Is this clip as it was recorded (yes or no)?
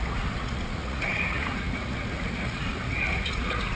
no